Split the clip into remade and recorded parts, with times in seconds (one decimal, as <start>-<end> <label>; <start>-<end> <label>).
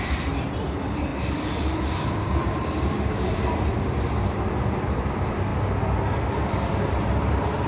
0.0-5.5 remade; 5.5-6.0 recorded; 6.0-7.7 remade